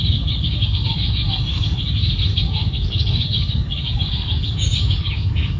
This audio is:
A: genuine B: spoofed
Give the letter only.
B